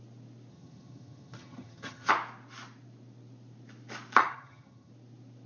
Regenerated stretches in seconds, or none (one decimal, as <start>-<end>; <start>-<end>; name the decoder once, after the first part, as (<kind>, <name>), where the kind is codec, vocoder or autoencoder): 0.5-2.1 (vocoder, HiFi-GAN); 4.2-4.9